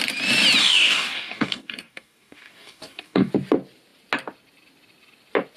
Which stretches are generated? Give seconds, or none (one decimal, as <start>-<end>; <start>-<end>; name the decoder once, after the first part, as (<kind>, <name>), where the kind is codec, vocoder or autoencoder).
0.6-3.3 (codec, DAC)